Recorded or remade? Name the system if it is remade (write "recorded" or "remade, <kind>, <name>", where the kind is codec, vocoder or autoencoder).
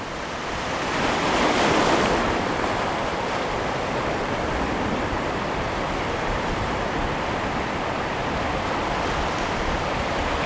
remade, vocoder, BigVGAN v2